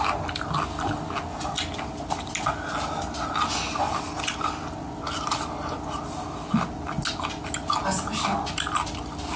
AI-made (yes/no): no